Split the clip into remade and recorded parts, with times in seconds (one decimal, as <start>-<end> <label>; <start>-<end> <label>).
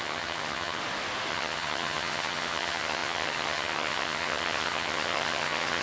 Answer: 0.0-0.8 remade; 0.8-1.3 recorded; 1.3-5.8 remade